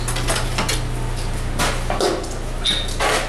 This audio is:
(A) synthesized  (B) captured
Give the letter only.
B